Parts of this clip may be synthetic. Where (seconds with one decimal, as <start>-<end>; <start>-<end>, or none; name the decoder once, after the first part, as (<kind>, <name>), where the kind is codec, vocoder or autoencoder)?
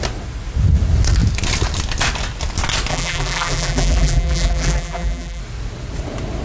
2.9-5.4 (vocoder, BigVGAN v2)